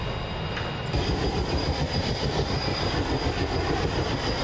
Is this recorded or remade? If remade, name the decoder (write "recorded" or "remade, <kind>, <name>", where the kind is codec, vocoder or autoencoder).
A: recorded